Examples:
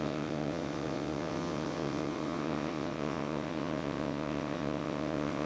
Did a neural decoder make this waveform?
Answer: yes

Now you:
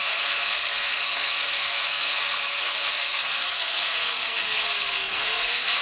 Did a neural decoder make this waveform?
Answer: yes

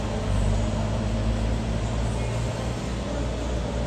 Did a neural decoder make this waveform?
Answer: no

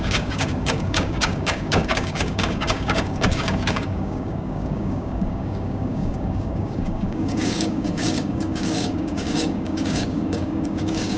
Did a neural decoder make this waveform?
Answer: yes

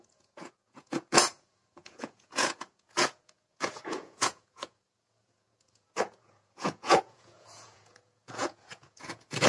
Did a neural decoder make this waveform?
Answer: yes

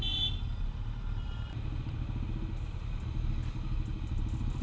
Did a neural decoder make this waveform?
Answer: no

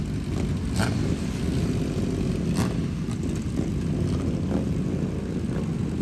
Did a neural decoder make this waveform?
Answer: no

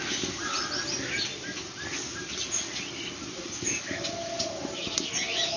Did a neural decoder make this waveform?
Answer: no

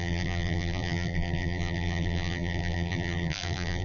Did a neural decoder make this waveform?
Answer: yes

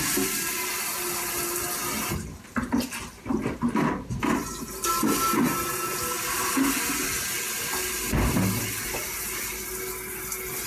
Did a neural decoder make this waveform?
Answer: no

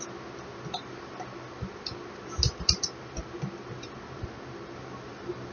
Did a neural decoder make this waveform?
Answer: no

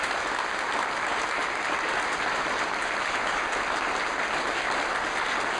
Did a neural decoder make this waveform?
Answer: no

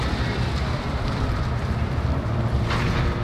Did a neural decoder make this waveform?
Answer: yes